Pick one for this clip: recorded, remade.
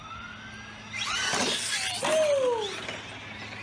recorded